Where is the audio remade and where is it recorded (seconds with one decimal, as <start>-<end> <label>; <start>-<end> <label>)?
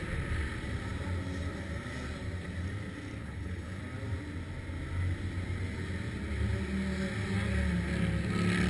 0.0-3.2 recorded; 3.2-3.8 remade; 3.8-8.7 recorded